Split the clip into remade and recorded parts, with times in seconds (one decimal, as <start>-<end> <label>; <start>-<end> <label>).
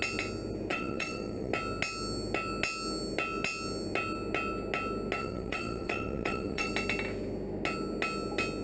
0.0-0.7 recorded; 0.7-1.5 remade; 1.5-5.2 recorded; 5.2-6.7 remade; 6.7-8.6 recorded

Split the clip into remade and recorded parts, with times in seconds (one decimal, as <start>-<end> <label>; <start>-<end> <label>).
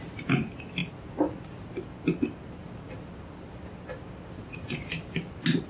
0.0-5.7 recorded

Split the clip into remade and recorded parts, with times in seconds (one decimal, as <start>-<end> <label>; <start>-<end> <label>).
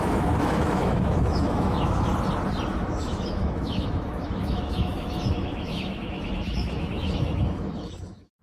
0.0-2.1 remade; 2.1-2.7 recorded; 2.7-8.4 remade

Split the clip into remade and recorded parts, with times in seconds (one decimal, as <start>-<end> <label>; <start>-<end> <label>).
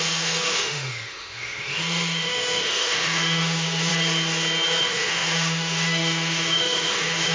0.0-3.9 remade; 3.9-4.8 recorded; 4.8-7.3 remade